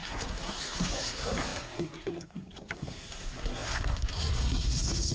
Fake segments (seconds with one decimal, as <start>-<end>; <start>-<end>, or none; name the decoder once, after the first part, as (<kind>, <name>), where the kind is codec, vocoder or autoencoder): 0.0-5.1 (codec, SNAC)